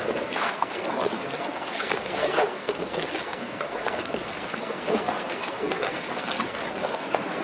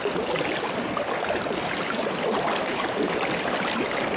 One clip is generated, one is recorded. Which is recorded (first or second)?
second